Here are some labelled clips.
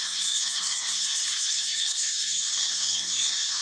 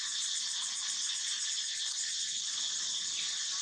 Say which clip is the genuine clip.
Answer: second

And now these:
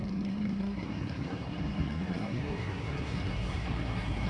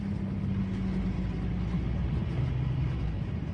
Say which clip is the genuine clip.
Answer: second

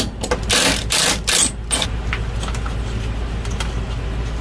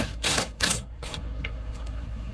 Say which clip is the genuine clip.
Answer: first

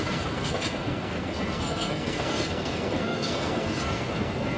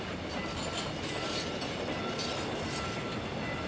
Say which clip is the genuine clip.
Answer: second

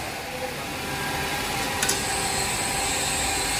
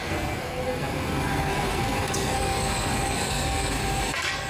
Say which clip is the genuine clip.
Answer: first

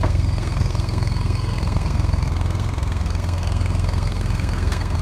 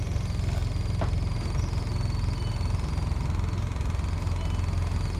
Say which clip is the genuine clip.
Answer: second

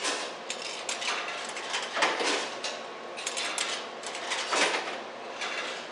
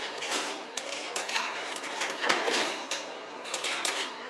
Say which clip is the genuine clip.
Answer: first